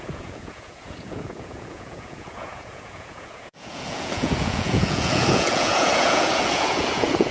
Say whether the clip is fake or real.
fake